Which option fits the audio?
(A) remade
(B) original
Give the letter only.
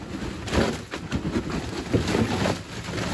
B